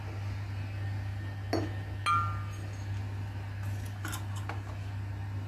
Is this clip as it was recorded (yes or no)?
yes